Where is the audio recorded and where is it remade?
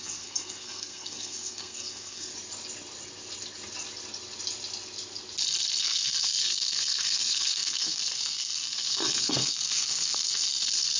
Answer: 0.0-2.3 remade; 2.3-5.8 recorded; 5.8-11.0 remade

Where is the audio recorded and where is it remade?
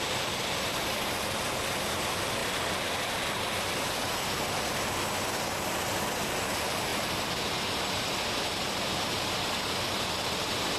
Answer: 0.0-10.8 recorded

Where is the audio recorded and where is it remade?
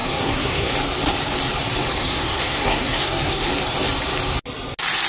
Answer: 0.0-0.7 remade; 0.7-1.9 recorded; 1.9-3.5 remade; 3.5-5.1 recorded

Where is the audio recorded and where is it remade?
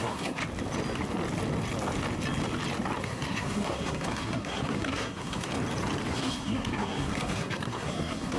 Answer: 0.0-0.4 remade; 0.4-3.0 recorded; 3.0-5.5 remade; 5.5-6.1 recorded; 6.1-8.4 remade